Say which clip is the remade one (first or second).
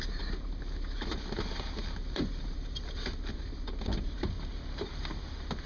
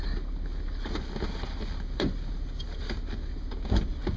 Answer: first